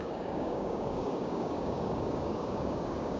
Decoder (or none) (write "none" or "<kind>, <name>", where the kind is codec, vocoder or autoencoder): codec, DAC